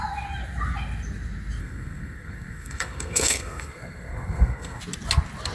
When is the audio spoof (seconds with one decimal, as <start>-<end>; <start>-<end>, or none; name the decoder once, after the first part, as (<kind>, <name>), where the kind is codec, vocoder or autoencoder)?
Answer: 1.6-4.8 (codec, SNAC)